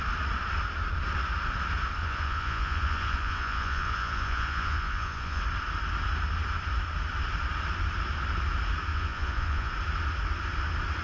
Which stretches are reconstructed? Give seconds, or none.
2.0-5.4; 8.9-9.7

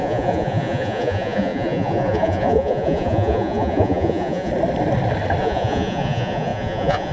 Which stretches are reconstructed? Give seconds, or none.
0.0-4.5; 5.4-7.1

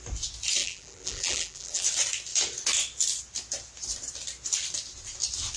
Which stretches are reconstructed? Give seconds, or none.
0.6-1.8

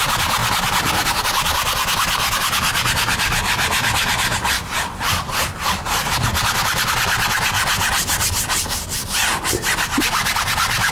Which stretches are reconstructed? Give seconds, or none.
none

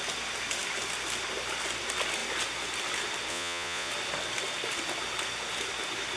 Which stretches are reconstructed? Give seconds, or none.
3.3-3.9

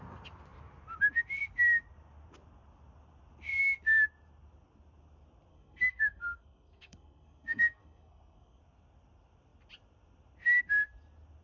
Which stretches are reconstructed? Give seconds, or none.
5.5-8.6